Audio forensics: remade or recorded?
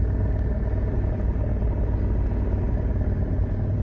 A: recorded